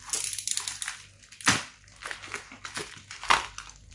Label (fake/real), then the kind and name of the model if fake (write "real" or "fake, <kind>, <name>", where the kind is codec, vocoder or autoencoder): real